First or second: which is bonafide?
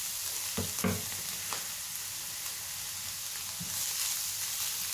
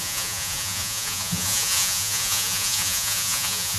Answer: first